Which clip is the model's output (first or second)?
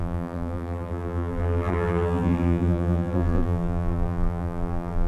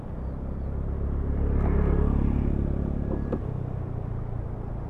first